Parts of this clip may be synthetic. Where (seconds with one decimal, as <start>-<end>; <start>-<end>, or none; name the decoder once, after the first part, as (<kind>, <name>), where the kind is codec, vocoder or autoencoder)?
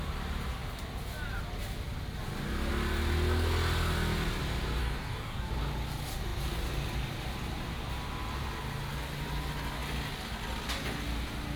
4.8-5.5 (codec, DAC)